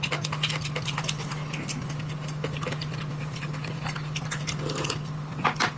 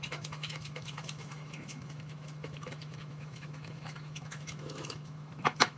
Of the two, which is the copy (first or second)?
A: second